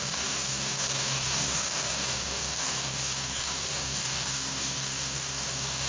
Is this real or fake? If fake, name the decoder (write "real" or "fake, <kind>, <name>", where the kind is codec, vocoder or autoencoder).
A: fake, codec, DAC